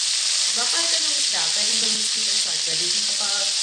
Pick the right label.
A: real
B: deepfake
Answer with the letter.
A